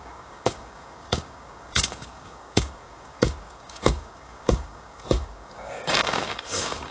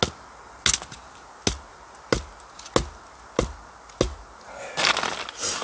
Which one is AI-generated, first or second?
first